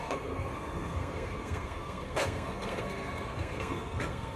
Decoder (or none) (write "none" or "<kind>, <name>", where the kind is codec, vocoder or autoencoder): codec, SNAC